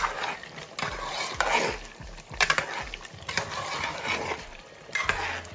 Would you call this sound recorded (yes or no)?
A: yes